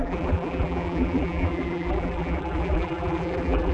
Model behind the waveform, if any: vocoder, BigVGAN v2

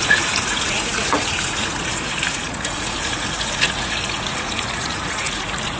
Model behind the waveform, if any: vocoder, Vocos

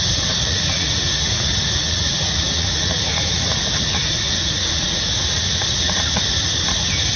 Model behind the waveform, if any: vocoder, Vocos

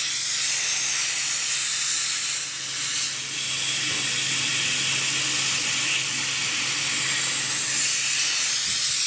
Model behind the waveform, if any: none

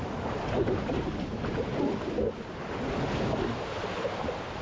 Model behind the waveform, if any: none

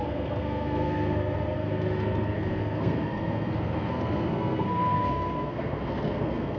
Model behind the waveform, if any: codec, SNAC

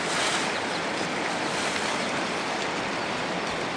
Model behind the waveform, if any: none